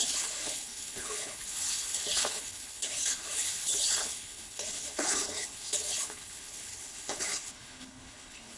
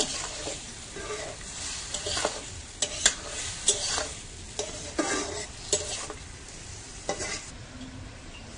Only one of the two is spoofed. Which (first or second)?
first